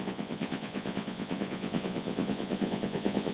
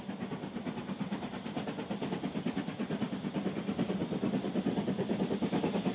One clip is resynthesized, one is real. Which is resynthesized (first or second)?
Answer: first